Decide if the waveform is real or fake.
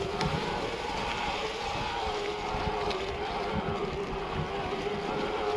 real